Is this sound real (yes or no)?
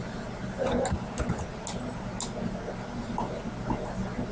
yes